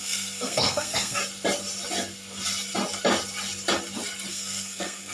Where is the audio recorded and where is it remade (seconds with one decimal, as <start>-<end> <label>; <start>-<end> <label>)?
0.0-1.2 remade; 1.2-4.3 recorded; 4.3-5.1 remade